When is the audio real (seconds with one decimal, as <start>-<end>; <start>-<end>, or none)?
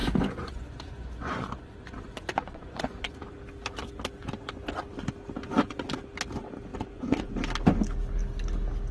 3.2-5.4; 5.9-6.7; 7.3-8.9